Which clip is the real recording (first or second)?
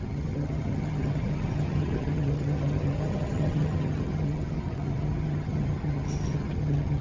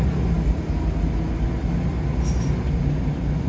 second